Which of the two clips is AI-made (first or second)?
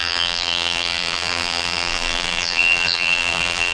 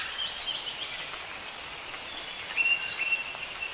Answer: first